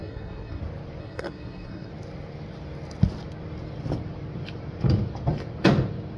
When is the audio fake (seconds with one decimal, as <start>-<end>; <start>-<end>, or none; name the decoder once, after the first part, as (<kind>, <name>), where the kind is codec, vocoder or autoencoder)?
0.0-0.6 (codec, SNAC); 1.0-1.9